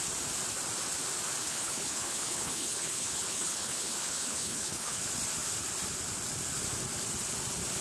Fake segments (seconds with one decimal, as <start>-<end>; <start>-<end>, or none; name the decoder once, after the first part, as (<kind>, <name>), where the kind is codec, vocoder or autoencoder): 1.4-5.0 (codec, HILCodec)